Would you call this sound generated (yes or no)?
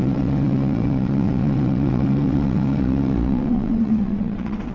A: yes